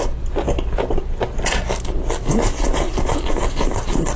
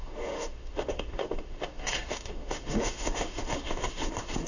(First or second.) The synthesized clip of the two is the second